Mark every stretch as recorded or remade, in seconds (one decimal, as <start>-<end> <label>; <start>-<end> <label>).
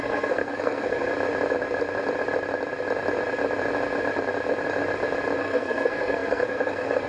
0.0-1.1 remade; 1.1-5.4 recorded; 5.4-7.1 remade